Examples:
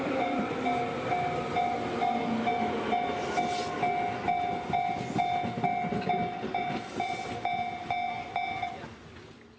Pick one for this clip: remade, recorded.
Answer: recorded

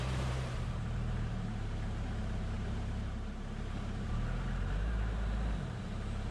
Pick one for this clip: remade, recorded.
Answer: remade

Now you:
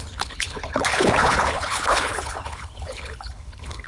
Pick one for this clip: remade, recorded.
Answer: remade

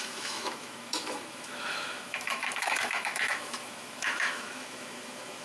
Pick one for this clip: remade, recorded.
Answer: remade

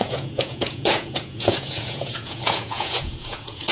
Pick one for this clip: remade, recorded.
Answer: remade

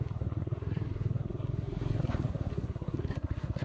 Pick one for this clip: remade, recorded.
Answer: remade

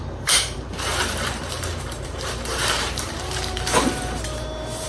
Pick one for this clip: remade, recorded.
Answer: remade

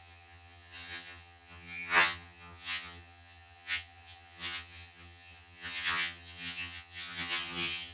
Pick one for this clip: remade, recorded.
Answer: remade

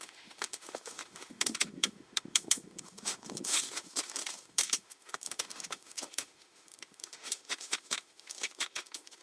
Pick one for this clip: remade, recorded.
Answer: remade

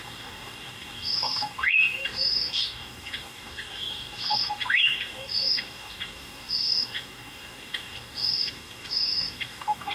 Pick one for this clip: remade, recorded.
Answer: remade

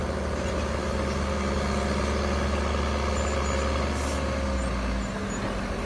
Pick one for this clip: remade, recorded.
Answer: recorded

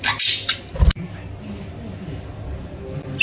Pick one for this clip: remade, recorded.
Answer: recorded